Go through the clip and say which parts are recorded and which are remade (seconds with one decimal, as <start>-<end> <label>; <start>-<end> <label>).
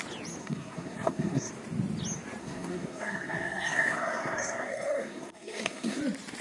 0.0-0.4 recorded; 0.4-1.5 remade; 1.5-2.4 recorded; 2.4-6.0 remade; 6.0-6.4 recorded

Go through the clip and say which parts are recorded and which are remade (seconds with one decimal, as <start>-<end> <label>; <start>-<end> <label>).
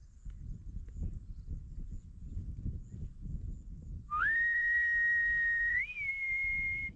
0.0-4.2 recorded; 4.2-5.8 remade; 5.8-7.0 recorded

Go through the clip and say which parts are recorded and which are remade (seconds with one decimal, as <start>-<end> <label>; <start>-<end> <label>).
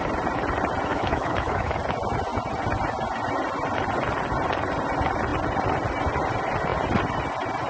0.0-0.9 recorded; 0.9-1.7 remade; 1.7-7.7 recorded